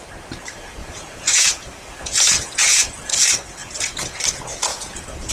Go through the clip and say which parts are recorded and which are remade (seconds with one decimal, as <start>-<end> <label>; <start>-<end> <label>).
0.0-0.8 recorded; 0.8-3.2 remade; 3.2-3.6 recorded; 3.6-4.2 remade; 4.2-4.7 recorded; 4.7-5.3 remade